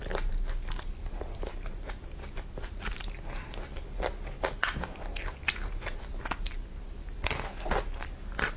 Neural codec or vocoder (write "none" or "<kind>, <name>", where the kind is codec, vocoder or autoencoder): none